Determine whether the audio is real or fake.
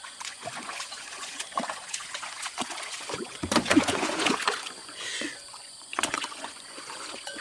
fake